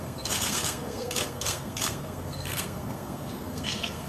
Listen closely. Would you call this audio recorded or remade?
remade